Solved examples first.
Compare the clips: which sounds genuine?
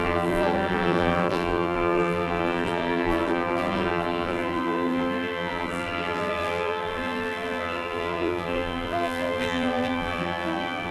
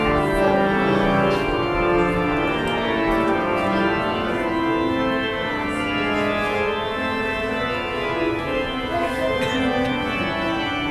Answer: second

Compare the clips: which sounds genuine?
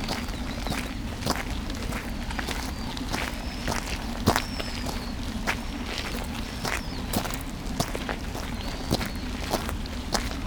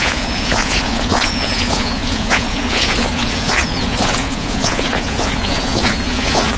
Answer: first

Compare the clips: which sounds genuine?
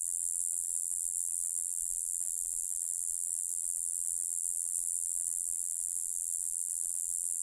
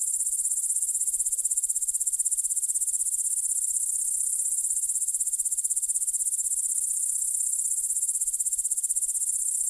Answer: second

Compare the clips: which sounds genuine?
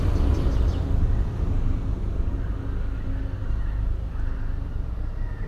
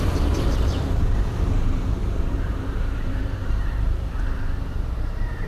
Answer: first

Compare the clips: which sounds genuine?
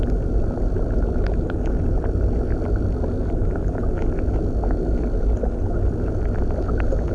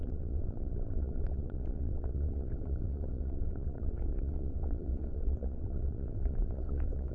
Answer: first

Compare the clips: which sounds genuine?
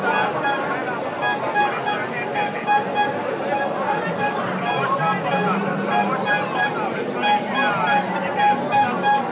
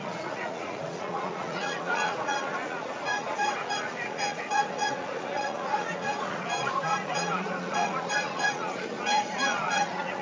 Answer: first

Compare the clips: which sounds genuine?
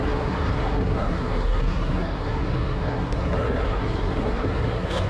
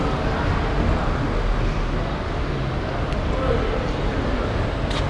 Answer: second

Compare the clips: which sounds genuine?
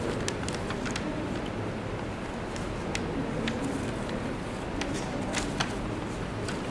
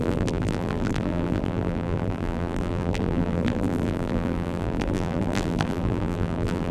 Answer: first